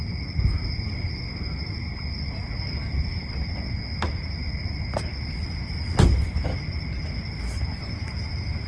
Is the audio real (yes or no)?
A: yes